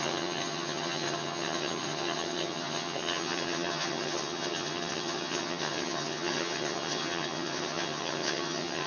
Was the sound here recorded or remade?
remade